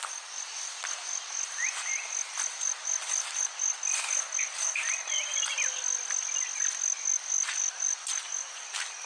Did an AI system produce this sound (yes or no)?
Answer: no